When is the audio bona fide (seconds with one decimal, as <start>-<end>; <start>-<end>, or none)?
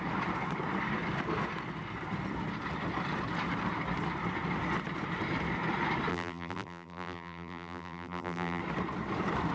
0.0-6.1; 8.6-9.5